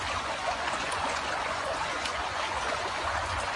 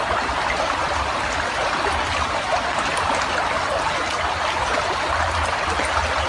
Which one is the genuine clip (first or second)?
second